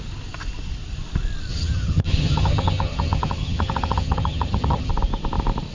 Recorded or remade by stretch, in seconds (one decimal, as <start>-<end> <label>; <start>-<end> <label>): 0.0-1.5 recorded; 1.5-4.9 remade; 4.9-5.7 recorded